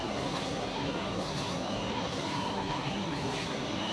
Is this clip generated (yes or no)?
yes